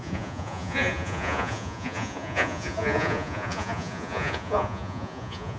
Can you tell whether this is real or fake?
fake